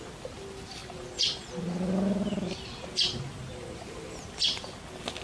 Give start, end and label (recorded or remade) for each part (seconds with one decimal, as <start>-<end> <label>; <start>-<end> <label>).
0.0-5.2 recorded